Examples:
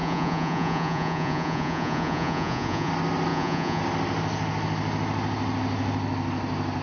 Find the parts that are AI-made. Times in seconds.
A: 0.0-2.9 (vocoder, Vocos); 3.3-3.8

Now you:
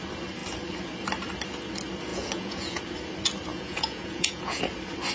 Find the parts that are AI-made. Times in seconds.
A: 2.1-2.8 (vocoder, Vocos); 3.5-4.6

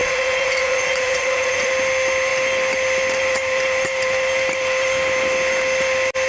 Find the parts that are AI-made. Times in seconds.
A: 0.0-1.7 (vocoder, Vocos)

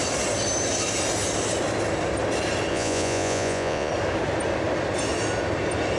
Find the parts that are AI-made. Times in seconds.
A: 2.7-3.9 (vocoder, Vocos)

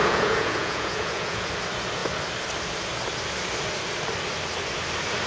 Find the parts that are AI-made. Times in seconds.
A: 0.0-1.5 (vocoder, Vocos)

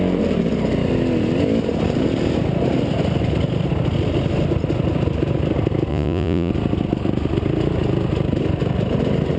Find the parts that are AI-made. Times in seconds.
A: 5.9-6.5 (vocoder, Vocos)

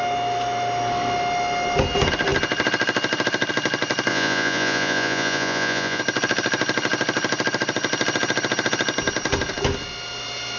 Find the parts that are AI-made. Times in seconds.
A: 4.1-6.0 (vocoder, Vocos)

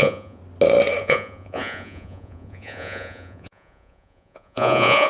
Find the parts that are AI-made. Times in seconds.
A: 0.0-0.4 (vocoder, Vocos); 1.0-5.1